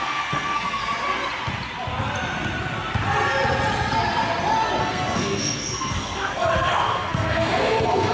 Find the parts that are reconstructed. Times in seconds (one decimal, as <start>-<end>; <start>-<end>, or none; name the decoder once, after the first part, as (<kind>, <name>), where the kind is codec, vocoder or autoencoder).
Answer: 0.0-0.8 (codec, SNAC); 4.8-8.1